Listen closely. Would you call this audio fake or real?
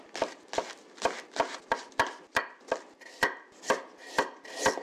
real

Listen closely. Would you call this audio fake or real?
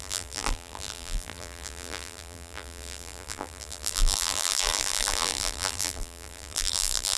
fake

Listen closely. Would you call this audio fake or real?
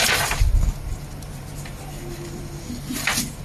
real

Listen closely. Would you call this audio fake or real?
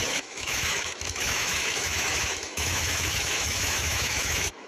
fake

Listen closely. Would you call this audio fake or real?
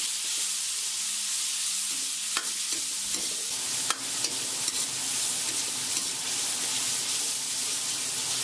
real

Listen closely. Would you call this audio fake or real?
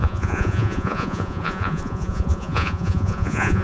fake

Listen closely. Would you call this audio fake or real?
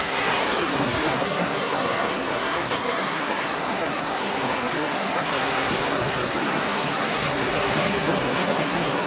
fake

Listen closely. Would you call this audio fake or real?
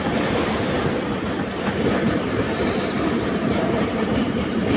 fake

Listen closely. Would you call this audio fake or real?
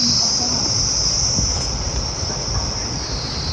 real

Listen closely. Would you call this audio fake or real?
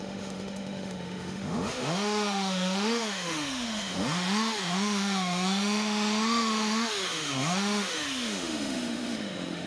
fake